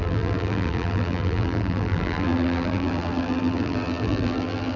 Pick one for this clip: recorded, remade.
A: remade